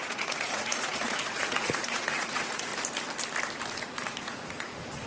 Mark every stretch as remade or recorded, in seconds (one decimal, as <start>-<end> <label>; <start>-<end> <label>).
0.0-2.7 remade; 2.7-4.1 recorded; 4.1-5.1 remade